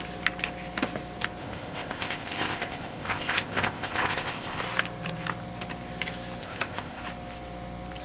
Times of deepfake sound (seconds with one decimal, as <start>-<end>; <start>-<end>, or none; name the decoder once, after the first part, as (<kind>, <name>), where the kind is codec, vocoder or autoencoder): 1.4-4.6 (codec, ZipCodec); 6.4-7.0